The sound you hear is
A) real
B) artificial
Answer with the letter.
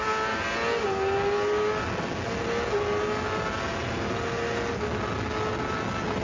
A